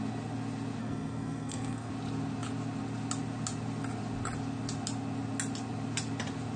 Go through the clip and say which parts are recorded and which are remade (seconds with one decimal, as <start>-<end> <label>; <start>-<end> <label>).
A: 0.0-0.8 recorded; 0.8-1.9 remade; 1.9-6.6 recorded